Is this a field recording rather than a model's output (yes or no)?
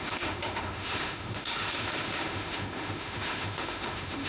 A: no